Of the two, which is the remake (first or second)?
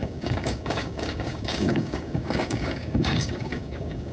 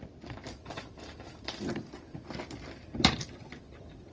first